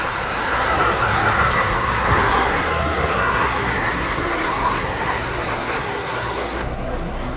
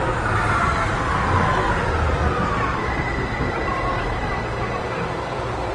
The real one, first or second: second